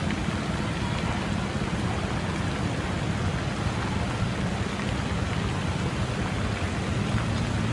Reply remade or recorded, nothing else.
recorded